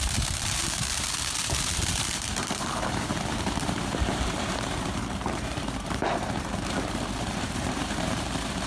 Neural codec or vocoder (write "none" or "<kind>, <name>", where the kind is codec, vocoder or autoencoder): vocoder, BigVGAN v2